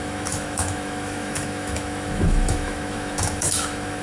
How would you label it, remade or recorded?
remade